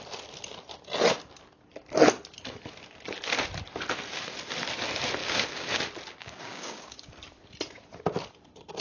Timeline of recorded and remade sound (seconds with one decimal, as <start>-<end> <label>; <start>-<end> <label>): 0.0-5.2 recorded; 5.2-5.8 remade; 5.8-6.2 recorded; 6.2-7.1 remade; 7.1-8.8 recorded